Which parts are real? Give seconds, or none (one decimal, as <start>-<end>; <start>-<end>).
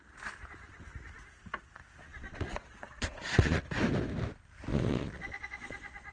0.0-2.1; 3.6-4.7